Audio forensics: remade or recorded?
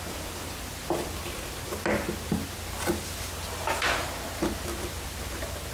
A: recorded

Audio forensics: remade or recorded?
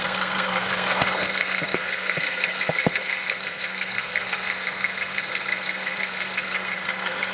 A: remade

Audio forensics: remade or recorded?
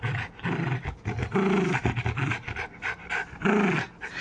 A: recorded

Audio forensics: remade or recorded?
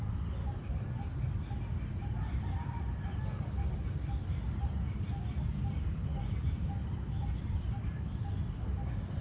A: recorded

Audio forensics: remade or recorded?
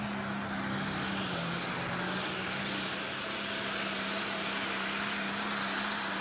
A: recorded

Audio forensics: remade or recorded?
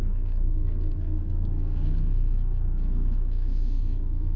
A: remade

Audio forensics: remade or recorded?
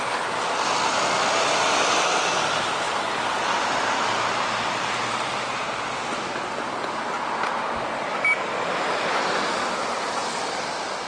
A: recorded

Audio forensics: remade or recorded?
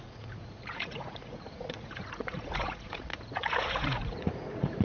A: remade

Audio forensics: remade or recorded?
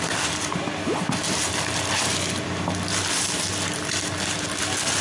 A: recorded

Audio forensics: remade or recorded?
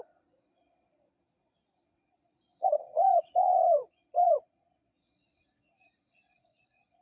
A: remade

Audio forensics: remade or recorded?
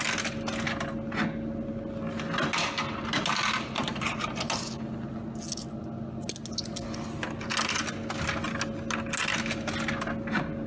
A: recorded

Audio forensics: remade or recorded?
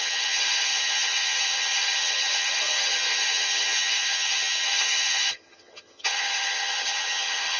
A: remade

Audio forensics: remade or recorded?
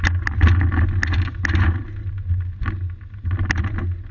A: recorded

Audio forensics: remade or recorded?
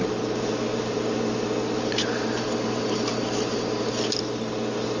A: recorded